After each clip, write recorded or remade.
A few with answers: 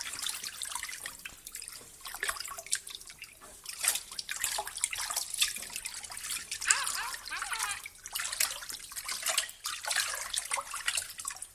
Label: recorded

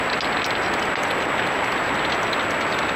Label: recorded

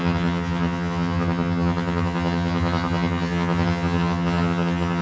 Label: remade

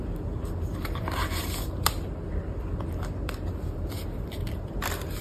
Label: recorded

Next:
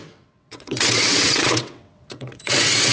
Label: remade